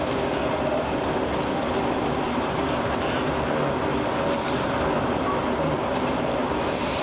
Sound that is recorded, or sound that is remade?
recorded